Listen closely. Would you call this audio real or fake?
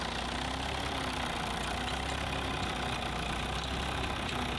real